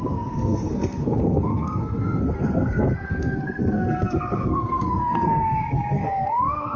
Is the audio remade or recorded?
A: remade